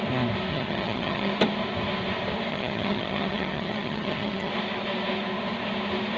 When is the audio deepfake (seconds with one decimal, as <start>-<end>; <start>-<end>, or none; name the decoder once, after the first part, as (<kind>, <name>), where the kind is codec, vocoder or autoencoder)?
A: 0.5-1.3 (vocoder, HiFi-GAN); 2.5-4.5